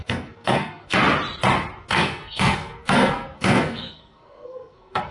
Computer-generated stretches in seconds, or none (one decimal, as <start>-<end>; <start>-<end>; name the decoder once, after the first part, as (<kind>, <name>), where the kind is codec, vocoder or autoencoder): 0.0-1.0 (codec, SNAC); 1.9-5.1